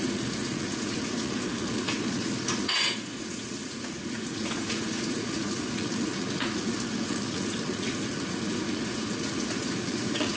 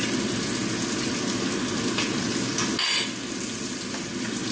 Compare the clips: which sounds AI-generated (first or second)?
first